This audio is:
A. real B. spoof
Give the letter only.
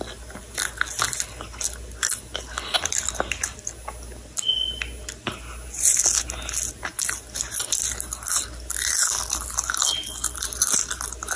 A